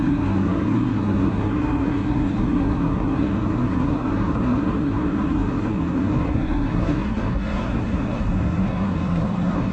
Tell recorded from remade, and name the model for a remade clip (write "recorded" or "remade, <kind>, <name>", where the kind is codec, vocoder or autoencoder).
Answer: remade, codec, SNAC